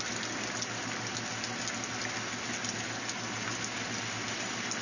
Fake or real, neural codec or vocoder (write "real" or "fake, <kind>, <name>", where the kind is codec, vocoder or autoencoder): real